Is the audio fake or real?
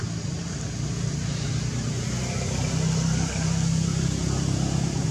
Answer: real